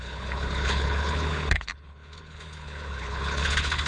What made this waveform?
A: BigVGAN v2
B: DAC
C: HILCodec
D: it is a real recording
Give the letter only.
C